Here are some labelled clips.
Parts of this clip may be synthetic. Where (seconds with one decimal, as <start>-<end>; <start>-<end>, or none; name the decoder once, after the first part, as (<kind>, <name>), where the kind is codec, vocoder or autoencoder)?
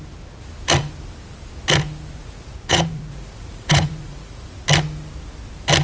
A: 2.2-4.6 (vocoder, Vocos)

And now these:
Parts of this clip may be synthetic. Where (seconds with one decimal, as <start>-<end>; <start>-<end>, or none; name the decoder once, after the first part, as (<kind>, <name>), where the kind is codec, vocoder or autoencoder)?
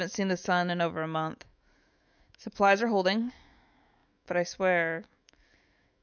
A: 0.0-6.0 (autoencoder, DAC-VAE)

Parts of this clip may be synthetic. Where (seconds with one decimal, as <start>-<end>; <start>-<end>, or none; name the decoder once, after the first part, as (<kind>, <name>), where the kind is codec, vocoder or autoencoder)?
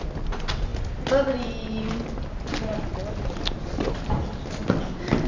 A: none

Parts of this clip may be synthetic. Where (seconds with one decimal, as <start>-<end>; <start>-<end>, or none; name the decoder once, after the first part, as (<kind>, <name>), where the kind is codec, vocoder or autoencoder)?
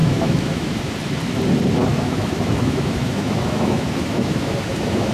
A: 0.0-0.9 (autoencoder, DAC-VAE); 1.9-5.1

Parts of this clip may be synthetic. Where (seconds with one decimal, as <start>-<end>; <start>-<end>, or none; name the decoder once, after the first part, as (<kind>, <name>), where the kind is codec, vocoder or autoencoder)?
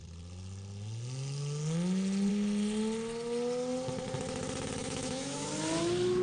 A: 4.8-5.5 (autoencoder, DAC-VAE)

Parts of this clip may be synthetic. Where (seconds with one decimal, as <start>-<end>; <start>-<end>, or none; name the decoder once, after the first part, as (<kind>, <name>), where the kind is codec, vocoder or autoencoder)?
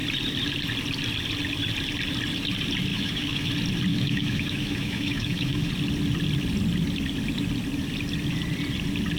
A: 2.9-3.5 (autoencoder, DAC-VAE); 3.9-5.7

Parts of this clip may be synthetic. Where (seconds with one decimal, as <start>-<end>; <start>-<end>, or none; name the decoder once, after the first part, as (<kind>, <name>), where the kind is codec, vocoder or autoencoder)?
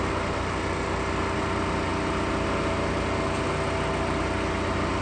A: none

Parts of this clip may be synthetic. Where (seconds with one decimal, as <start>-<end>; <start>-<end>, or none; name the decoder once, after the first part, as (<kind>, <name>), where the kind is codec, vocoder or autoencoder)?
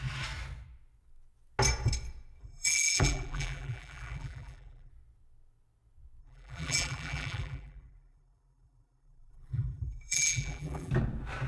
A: 2.4-4.9 (vocoder, BigVGAN v2); 6.2-10.9